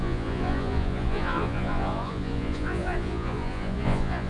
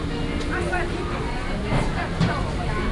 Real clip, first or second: second